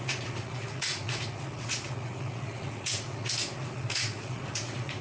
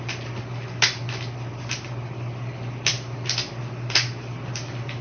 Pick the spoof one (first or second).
first